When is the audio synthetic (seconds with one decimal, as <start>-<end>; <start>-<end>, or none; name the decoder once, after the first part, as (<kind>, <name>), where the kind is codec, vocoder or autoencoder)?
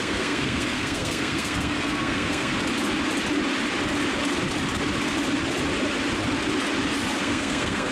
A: 0.0-2.5 (codec, SNAC); 7.2-7.9